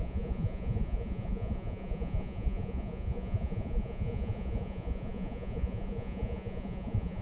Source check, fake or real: fake